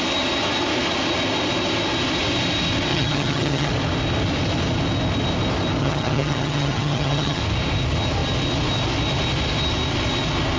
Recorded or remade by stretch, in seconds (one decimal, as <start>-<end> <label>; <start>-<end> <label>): 0.0-2.9 recorded; 2.9-3.7 remade; 3.7-5.8 recorded; 5.8-7.4 remade; 7.4-10.6 recorded